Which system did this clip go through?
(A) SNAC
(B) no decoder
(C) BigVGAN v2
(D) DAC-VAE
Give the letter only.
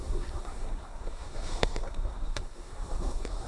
A